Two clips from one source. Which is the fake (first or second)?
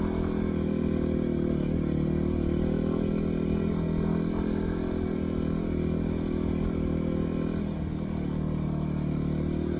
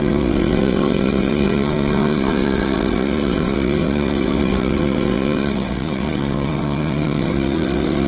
second